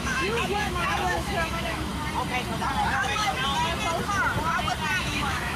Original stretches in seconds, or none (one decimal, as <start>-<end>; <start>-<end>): 1.9-2.9; 3.4-5.0